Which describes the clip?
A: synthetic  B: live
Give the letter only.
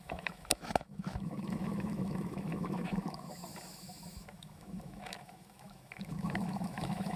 A